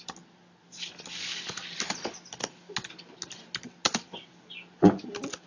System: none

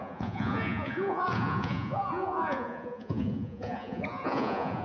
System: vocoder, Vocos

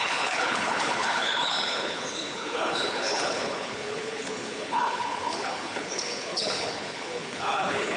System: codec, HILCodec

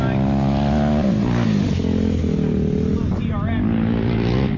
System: none